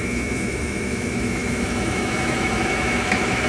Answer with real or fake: fake